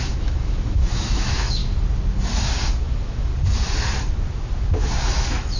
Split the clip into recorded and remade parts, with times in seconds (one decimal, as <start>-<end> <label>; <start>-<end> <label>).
0.0-1.6 remade; 1.6-2.8 recorded; 2.8-3.3 remade; 3.3-5.1 recorded; 5.1-5.6 remade